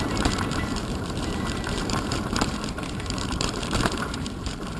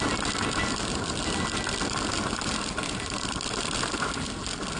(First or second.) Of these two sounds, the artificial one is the first